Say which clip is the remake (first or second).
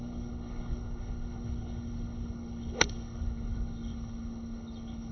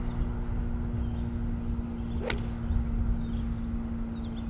first